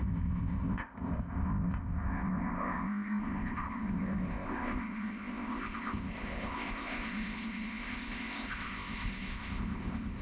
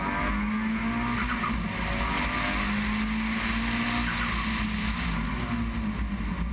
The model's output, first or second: first